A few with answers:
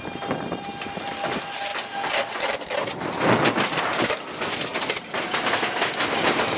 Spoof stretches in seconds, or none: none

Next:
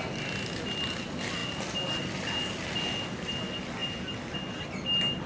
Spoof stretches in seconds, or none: none

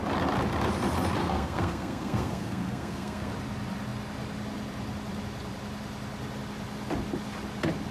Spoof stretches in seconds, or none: 1.2-3.3 (codec, SNAC)

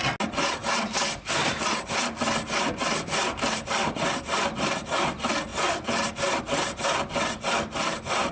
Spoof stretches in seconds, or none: none

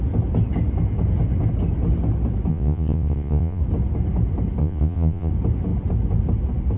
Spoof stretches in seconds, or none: 2.5-3.6 (vocoder, Vocos); 4.6-5.3

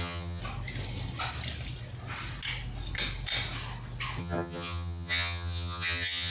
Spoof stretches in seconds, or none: 0.0-0.4 (vocoder, HiFi-GAN); 4.2-6.3